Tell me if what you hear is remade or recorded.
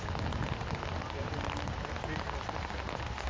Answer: recorded